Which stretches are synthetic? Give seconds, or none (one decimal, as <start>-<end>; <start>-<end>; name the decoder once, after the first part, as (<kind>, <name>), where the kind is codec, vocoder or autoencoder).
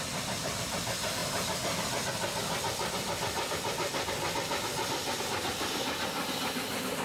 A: none